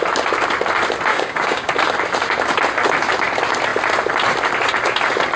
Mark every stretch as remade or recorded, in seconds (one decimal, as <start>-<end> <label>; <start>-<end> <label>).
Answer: 0.0-1.1 recorded; 1.1-1.7 remade; 1.7-5.4 recorded